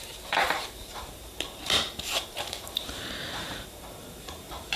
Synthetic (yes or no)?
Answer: yes